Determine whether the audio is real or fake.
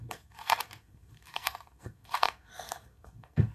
fake